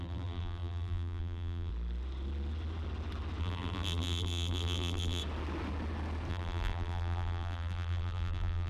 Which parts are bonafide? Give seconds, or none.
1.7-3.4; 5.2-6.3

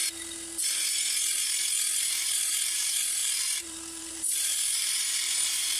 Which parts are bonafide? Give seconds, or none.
0.0-2.1

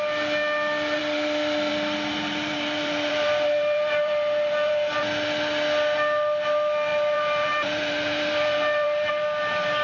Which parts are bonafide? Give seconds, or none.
0.0-2.1; 5.0-6.9; 9.1-9.8

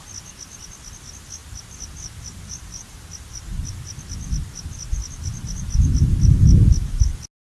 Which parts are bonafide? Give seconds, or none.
0.0-1.4; 5.1-7.6

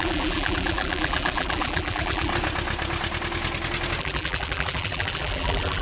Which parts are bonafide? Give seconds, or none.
2.3-4.0

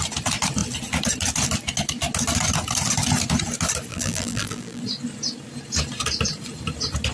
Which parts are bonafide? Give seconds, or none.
0.0-3.9; 4.8-7.1

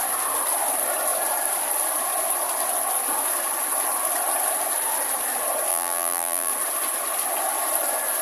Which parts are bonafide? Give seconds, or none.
0.0-5.7; 6.5-8.2

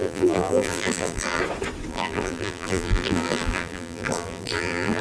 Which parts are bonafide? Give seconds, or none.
1.4-1.9